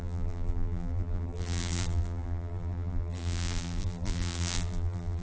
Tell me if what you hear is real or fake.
fake